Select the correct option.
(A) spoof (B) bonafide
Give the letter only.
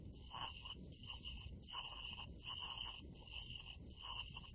A